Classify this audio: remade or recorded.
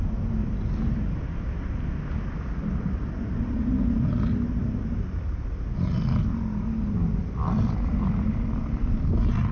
recorded